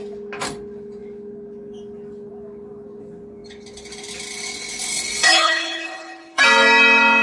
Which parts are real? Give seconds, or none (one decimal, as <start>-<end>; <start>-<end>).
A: 0.0-4.9; 6.4-7.2

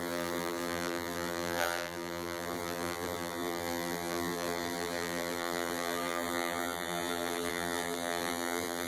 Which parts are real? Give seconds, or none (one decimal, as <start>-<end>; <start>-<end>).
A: none

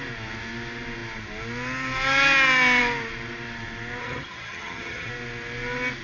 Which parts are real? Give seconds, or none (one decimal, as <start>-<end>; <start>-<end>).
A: 0.0-4.0; 5.1-6.0

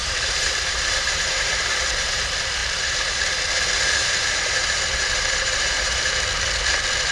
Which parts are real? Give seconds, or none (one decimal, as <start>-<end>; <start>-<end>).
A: 2.2-2.6; 3.2-4.0; 6.0-7.1

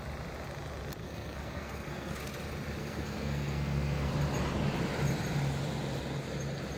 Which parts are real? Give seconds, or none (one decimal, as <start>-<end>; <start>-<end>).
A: 0.0-1.0; 2.2-2.8; 4.1-6.8

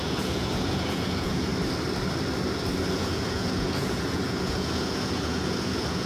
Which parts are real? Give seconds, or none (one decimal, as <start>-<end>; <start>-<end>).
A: 1.5-2.9

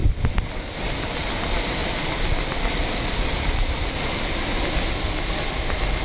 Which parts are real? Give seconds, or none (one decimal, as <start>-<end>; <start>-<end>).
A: 0.6-1.8; 5.4-6.0

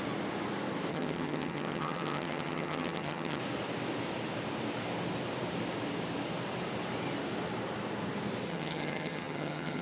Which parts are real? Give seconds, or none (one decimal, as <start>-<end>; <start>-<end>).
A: 0.0-0.9; 3.4-8.5